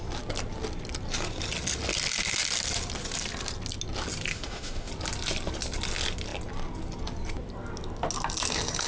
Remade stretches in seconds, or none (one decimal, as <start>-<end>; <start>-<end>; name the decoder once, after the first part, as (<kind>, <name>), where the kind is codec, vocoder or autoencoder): 4.3-4.9 (autoencoder, DAC-VAE)

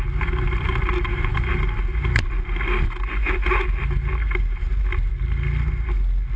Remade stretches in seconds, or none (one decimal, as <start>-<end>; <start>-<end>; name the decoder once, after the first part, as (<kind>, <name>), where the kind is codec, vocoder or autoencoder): none

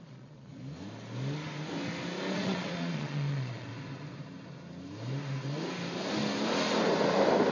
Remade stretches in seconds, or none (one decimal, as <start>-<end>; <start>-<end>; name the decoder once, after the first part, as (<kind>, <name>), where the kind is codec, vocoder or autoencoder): 0.0-0.5 (vocoder, Vocos); 2.3-3.7

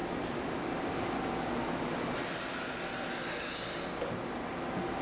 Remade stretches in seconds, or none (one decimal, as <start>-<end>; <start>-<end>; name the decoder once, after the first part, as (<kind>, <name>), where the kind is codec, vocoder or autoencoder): none